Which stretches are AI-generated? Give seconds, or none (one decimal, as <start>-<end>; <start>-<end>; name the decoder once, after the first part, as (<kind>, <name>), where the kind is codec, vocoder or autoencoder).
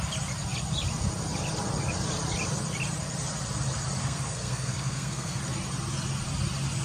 4.0-5.4 (codec, SNAC)